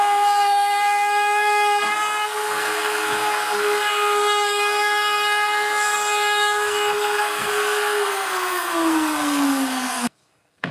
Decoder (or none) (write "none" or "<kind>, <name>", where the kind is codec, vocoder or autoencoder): codec, SNAC